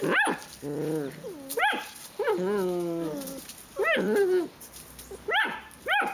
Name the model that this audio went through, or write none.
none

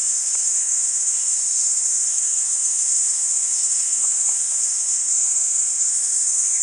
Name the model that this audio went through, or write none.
codec, SNAC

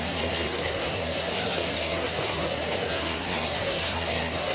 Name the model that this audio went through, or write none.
codec, SNAC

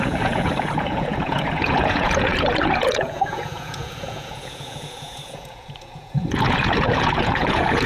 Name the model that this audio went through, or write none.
vocoder, Vocos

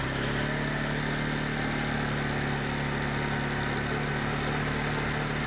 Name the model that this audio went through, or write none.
none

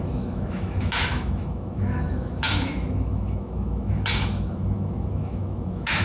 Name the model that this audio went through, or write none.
autoencoder, DAC-VAE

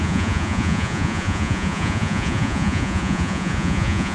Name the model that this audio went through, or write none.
vocoder, Vocos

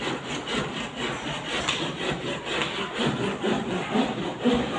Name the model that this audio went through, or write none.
none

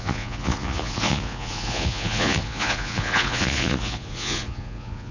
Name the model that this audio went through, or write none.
vocoder, Vocos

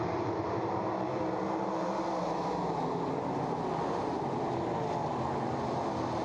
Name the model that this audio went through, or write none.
none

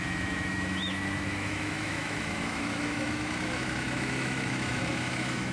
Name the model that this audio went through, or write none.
autoencoder, DAC-VAE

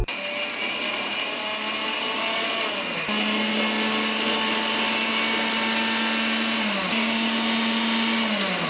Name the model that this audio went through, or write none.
none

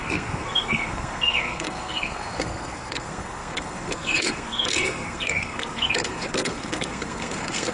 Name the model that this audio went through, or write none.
codec, SNAC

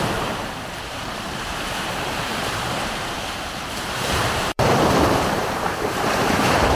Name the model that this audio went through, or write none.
vocoder, BigVGAN v2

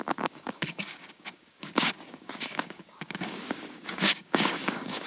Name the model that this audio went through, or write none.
codec, DAC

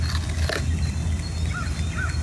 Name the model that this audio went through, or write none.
none